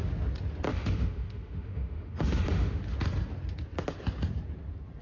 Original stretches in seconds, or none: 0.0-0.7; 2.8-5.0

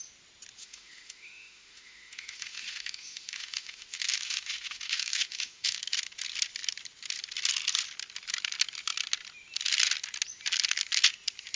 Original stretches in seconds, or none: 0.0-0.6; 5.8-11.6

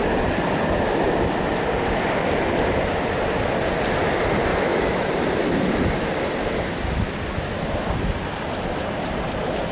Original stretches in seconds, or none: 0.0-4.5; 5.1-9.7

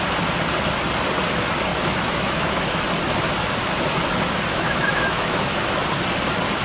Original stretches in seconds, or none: 0.0-1.7; 2.8-4.5; 5.6-6.6

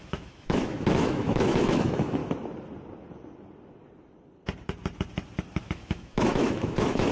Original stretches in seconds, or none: 2.2-5.6

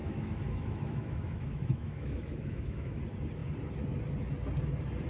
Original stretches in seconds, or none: 3.0-5.1